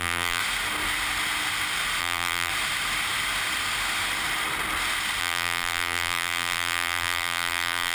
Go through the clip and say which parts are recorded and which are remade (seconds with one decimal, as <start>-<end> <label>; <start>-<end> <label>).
0.0-0.4 remade; 0.4-2.0 recorded; 2.0-2.5 remade; 2.5-5.2 recorded; 5.2-7.9 remade